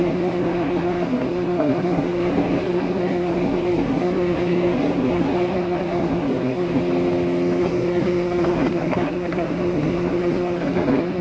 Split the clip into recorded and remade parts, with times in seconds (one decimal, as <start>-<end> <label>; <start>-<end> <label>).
0.0-6.8 remade; 6.8-7.6 recorded; 7.6-11.2 remade